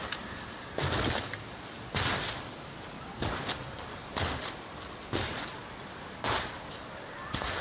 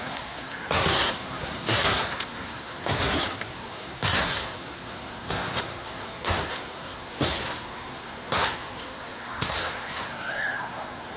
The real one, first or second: first